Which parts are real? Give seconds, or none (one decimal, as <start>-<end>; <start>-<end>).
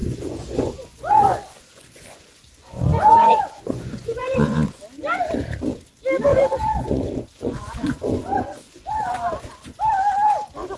4.8-6.3; 9.8-10.8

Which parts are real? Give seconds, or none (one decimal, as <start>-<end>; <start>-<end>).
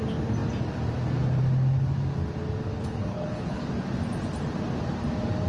0.0-2.8; 3.6-5.5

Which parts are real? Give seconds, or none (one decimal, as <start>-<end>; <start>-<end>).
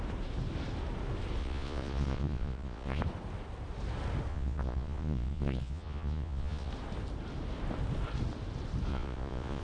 0.0-1.4; 3.0-4.3; 6.7-8.9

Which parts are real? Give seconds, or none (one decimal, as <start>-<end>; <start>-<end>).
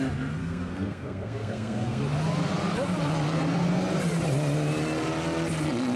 0.0-0.4; 2.0-6.0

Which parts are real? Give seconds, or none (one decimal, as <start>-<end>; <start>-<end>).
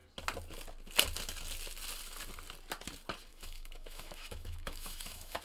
0.0-3.3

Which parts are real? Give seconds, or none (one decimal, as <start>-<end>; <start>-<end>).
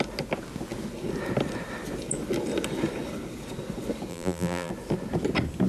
0.0-4.1; 4.7-5.7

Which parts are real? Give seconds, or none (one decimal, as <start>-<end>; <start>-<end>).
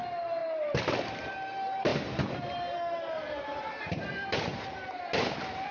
0.0-0.4; 1.3-1.9; 3.8-4.5; 5.1-5.7